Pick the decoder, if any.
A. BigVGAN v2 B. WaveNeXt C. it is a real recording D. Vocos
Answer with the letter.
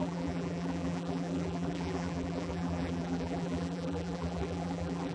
A